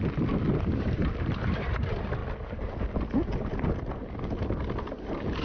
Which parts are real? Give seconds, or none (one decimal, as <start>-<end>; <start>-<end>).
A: 0.0-0.5; 2.2-5.0

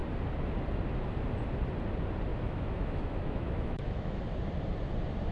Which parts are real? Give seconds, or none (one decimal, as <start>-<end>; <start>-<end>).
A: 0.0-2.3; 4.2-5.3

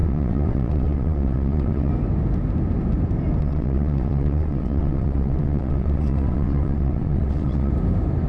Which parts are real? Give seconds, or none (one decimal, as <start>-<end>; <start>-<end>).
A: 1.9-3.4; 7.7-8.3

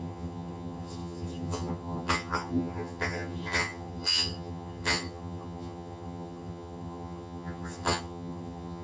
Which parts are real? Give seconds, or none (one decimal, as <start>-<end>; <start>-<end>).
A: none

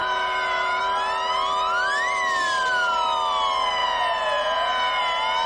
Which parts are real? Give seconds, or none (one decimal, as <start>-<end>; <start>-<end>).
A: 0.8-3.8; 5.0-5.5

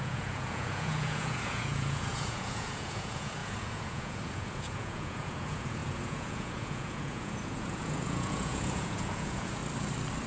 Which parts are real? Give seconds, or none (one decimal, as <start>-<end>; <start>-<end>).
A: 9.6-10.3

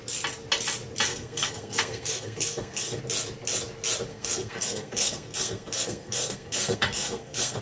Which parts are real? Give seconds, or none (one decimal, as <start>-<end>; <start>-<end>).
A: 0.0-1.1; 3.0-4.1